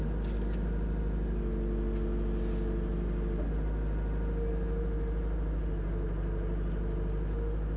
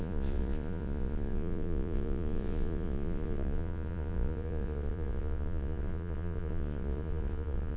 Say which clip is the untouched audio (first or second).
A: first